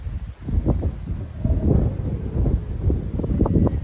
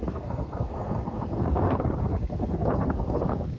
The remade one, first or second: second